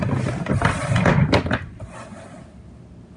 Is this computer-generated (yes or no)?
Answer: no